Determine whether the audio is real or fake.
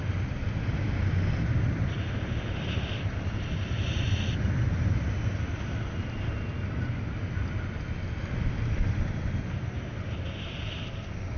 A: real